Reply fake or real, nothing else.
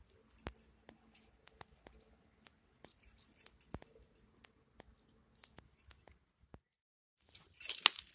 real